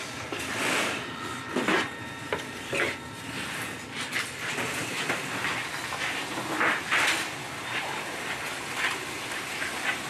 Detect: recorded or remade recorded